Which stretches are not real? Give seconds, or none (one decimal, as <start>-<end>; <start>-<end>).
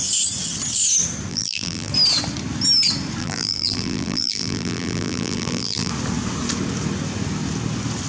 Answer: 1.3-1.9; 3.2-5.9